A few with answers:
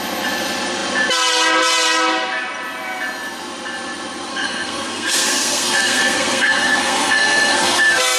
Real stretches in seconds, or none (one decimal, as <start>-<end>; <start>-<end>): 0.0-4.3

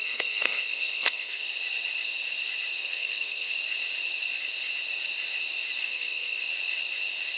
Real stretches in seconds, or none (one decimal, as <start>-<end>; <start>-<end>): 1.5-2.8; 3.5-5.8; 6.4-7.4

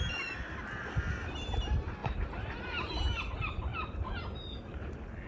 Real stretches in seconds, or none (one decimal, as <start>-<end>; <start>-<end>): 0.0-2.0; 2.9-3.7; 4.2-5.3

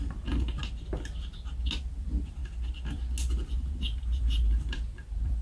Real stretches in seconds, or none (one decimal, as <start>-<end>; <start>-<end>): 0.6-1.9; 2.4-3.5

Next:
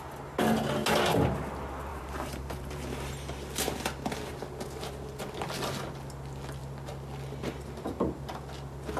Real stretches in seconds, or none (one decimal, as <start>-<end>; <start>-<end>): 0.0-1.9; 3.1-9.0

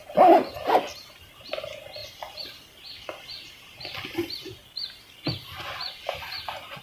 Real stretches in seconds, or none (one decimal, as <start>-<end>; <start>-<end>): 0.0-6.8